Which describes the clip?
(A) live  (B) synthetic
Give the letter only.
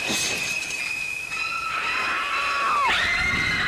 A